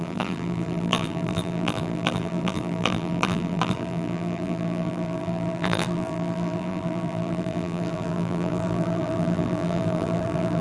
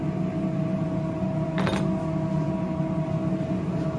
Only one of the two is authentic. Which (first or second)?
second